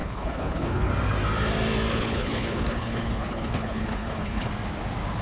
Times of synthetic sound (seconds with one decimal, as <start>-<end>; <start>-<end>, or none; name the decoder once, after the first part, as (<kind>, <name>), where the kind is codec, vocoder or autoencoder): 0.0-0.9 (codec, HILCodec); 1.9-4.5